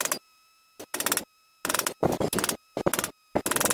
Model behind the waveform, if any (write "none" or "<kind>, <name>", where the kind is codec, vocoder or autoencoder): none